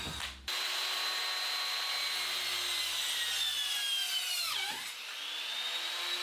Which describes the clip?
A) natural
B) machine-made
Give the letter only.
A